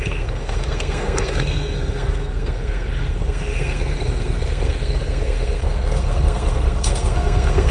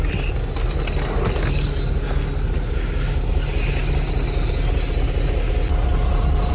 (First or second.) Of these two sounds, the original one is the second